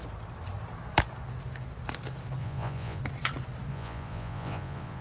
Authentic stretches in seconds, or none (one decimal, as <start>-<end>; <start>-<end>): 0.0-2.4; 3.0-3.7